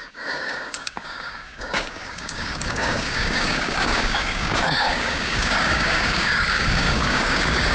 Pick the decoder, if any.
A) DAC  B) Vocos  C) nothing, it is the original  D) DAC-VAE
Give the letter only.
A